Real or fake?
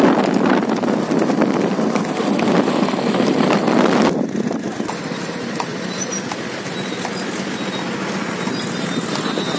real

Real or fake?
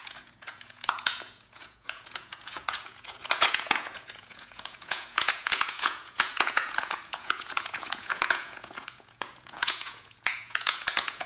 fake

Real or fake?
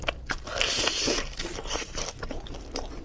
real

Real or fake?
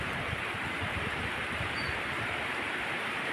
fake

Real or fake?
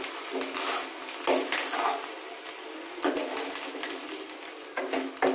real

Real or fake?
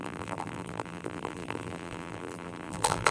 fake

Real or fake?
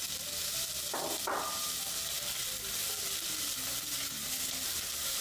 real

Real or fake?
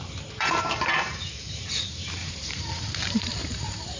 fake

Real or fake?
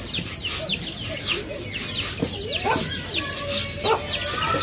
real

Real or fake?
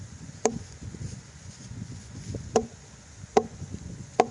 fake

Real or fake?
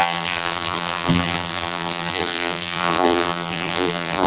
fake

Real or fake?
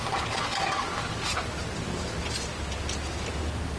real